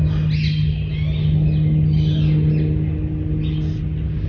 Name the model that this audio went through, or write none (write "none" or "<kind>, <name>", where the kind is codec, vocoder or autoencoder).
none